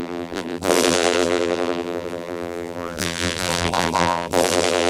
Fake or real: fake